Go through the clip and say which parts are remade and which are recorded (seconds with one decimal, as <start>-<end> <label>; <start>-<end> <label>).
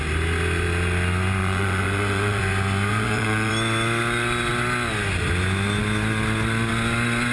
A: 0.0-1.4 recorded; 1.4-2.4 remade; 2.4-2.9 recorded; 2.9-3.5 remade; 3.5-7.3 recorded